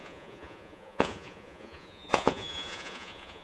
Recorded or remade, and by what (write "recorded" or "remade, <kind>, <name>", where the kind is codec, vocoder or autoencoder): remade, vocoder, Vocos